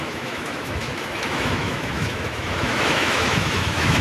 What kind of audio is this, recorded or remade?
remade